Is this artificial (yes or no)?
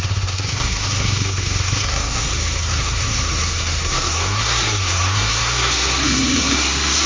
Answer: yes